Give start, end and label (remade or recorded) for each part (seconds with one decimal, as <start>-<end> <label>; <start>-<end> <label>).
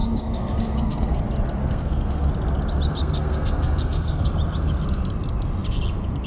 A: 0.0-1.2 remade; 1.2-1.6 recorded; 1.6-2.3 remade; 2.3-3.0 recorded; 3.0-4.3 remade; 4.3-6.3 recorded